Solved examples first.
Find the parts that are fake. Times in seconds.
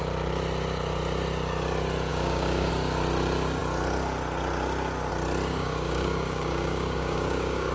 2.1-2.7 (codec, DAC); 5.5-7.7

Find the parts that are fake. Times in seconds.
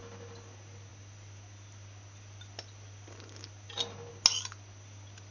none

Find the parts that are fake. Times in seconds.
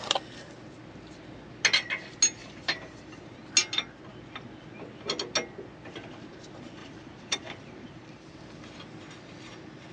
2.4-3.2 (vocoder, BigVGAN v2); 6.8-8.8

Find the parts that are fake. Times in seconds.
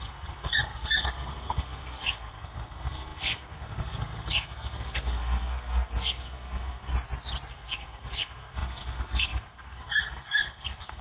0.0-6.9 (codec, SNAC); 7.5-11.0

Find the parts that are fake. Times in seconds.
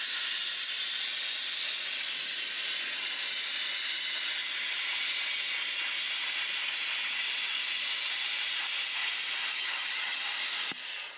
9.5-10.2 (vocoder, HiFi-GAN)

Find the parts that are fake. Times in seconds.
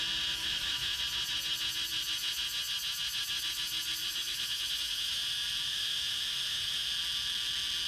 0.4-1.0 (autoencoder, DAC-VAE); 4.0-5.2; 5.7-6.9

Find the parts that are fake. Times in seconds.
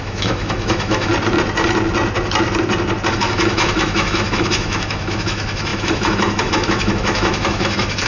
0.0-1.1 (autoencoder, DAC-VAE); 3.1-8.1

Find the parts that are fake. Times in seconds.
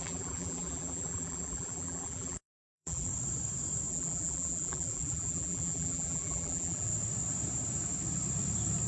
0.0-3.1 (vocoder, BigVGAN v2); 3.9-6.9